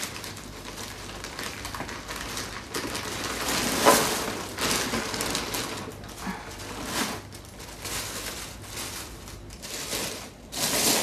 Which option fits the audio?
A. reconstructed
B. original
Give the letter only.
B